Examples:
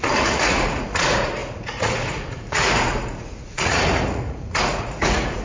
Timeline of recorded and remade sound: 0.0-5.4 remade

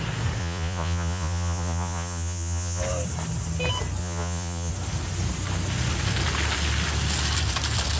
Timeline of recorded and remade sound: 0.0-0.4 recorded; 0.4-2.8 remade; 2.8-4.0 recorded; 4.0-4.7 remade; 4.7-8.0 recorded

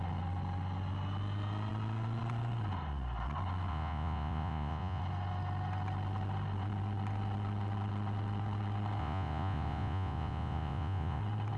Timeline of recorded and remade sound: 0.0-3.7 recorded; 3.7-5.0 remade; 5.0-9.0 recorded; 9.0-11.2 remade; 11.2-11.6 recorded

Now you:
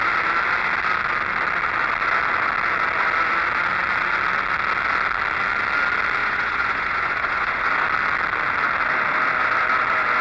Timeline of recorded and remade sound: 0.0-6.2 recorded; 6.2-7.7 remade; 7.7-10.2 recorded

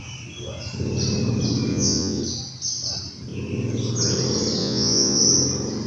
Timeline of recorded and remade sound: 0.0-1.7 recorded; 1.7-2.2 remade; 2.2-4.6 recorded; 4.6-5.2 remade; 5.2-5.9 recorded